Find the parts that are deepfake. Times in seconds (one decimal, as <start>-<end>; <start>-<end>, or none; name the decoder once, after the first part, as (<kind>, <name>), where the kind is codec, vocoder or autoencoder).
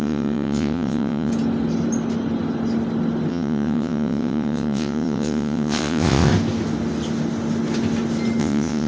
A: 0.0-1.3 (vocoder, WaveNeXt); 3.3-6.3; 8.4-8.9